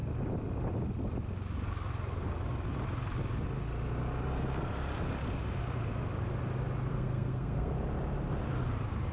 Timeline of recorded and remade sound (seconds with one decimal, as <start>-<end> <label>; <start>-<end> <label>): 0.0-6.9 recorded; 6.9-7.7 remade; 7.7-9.1 recorded